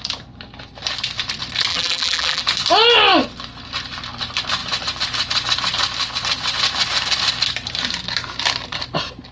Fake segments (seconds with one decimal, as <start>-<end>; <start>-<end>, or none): 1.7-2.4